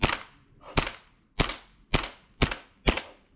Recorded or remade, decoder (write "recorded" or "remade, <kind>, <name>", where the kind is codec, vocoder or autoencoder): recorded